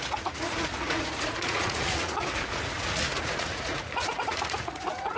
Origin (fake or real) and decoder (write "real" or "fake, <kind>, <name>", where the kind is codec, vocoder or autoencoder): fake, vocoder, Vocos